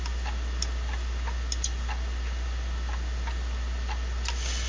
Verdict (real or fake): real